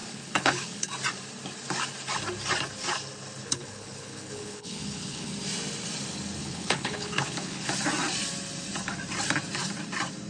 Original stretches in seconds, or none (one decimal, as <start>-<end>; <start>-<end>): 0.9-3.4; 5.3-6.4; 7.7-10.3